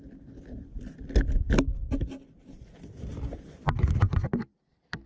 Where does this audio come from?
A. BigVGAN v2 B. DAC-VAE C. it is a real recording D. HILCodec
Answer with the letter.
C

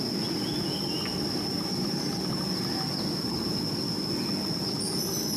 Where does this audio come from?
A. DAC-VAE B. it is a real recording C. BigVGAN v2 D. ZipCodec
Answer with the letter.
B